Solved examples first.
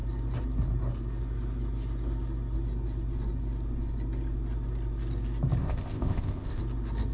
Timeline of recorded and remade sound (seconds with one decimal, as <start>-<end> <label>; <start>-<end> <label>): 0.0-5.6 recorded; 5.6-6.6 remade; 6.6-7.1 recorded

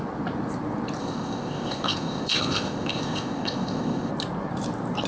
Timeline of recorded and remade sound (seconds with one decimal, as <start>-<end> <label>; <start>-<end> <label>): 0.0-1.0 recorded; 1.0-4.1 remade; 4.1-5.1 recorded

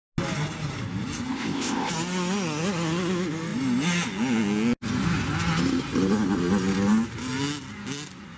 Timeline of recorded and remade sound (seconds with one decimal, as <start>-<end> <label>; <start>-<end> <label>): 0.0-1.3 recorded; 1.3-1.9 remade; 1.9-8.4 recorded

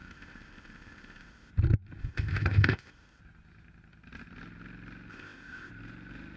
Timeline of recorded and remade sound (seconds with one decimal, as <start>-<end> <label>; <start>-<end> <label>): 0.0-1.5 remade; 1.5-2.0 recorded; 2.0-3.2 remade; 3.2-5.1 recorded; 5.1-5.7 remade; 5.7-6.4 recorded

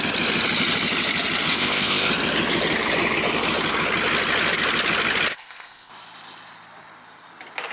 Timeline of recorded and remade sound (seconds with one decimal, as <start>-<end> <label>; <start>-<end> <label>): 0.0-1.5 recorded; 1.5-2.1 remade; 2.1-5.3 recorded; 5.3-5.9 remade; 5.9-7.7 recorded

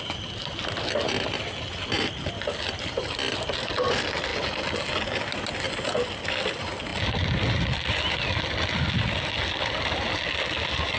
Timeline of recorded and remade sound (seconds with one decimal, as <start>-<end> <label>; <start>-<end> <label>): 0.0-11.0 recorded